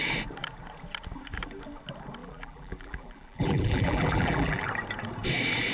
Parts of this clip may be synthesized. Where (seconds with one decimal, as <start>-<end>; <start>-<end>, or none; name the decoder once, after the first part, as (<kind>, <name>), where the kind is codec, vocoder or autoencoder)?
2.2-4.7 (vocoder, BigVGAN v2)